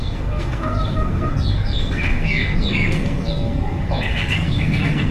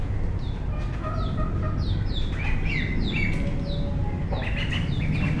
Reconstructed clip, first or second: first